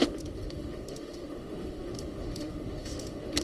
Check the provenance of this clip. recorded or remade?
remade